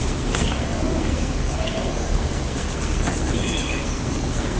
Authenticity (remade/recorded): remade